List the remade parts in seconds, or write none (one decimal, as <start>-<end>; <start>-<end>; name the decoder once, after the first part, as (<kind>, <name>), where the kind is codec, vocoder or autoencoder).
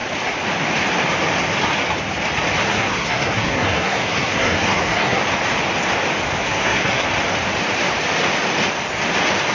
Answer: 2.7-5.2 (codec, SNAC); 6.4-7.1